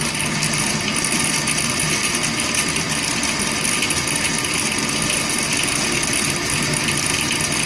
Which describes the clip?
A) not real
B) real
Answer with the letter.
B